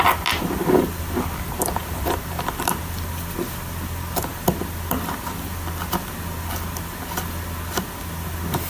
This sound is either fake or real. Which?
real